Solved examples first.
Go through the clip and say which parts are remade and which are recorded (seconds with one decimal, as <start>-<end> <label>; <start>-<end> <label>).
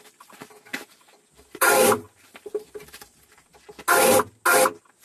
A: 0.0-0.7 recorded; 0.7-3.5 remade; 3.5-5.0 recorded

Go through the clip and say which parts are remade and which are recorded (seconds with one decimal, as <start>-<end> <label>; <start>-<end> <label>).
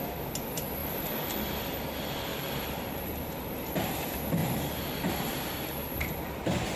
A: 0.0-0.8 recorded; 0.8-1.8 remade; 1.8-2.3 recorded; 2.3-3.9 remade; 3.9-4.4 recorded; 4.4-6.8 remade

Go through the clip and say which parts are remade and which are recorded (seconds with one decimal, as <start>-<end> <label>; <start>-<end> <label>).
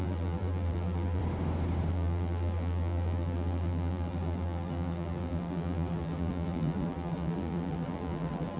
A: 0.0-1.2 remade; 1.2-1.9 recorded; 1.9-8.6 remade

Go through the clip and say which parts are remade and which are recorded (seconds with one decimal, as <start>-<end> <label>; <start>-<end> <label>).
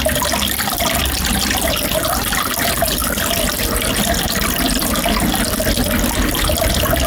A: 0.0-7.1 recorded